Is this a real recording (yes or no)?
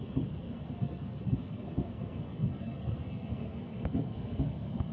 no